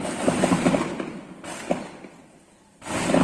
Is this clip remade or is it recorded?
recorded